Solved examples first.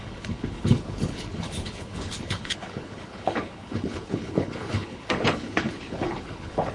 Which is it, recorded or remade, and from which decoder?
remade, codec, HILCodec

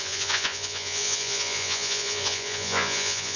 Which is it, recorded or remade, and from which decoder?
remade, vocoder, Vocos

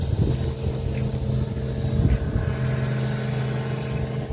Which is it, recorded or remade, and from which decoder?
recorded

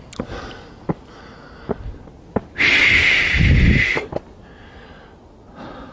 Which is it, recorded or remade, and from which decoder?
recorded